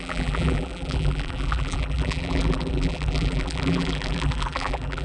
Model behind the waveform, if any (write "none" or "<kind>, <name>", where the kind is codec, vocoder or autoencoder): vocoder, BigVGAN v2